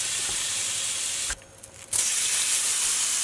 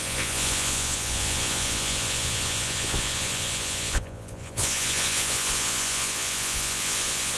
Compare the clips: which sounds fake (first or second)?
second